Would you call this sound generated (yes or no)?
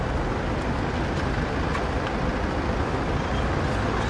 no